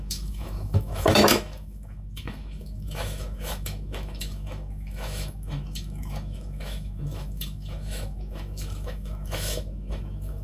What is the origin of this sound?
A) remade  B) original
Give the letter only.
A